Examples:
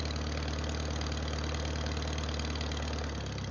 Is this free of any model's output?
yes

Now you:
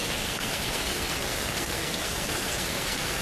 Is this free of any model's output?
no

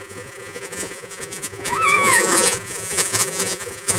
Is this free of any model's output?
no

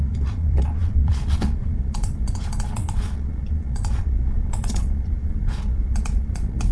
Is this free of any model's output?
no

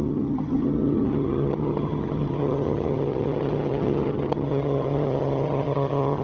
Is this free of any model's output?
no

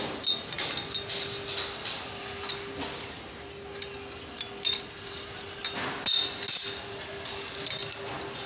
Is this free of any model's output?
yes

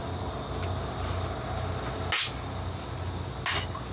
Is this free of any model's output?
yes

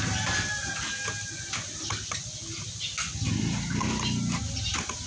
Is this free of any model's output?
yes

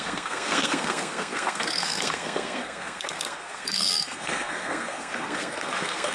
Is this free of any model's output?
no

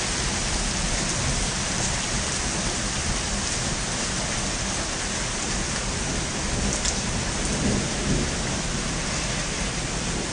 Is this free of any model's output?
yes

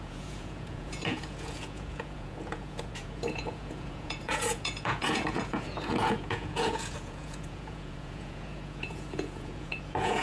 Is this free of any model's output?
no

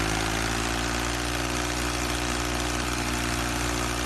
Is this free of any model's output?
yes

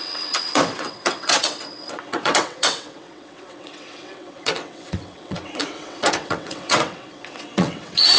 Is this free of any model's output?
no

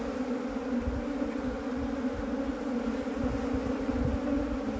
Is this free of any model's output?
yes